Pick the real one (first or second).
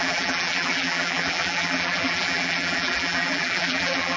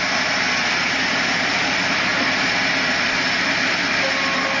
second